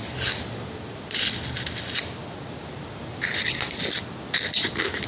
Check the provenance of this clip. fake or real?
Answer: real